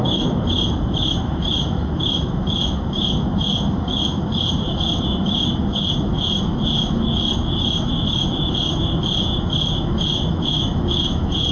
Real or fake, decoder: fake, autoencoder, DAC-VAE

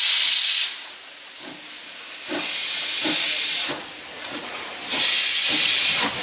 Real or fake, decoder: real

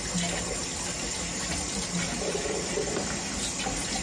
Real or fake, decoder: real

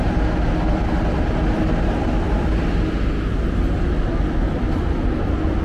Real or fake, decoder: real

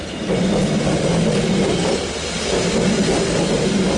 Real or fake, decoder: real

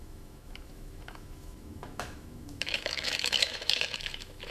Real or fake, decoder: fake, autoencoder, DAC-VAE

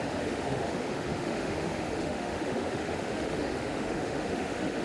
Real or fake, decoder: fake, autoencoder, DAC-VAE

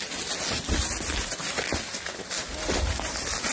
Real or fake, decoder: real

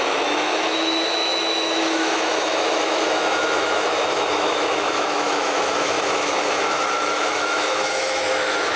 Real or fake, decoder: fake, autoencoder, DAC-VAE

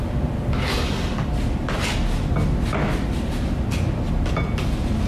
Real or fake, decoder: real